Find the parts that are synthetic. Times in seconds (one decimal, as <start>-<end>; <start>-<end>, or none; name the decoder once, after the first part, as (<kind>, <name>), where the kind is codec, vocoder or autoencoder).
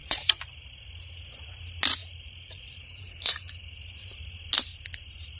0.0-0.7 (vocoder, BigVGAN v2); 2.0-4.1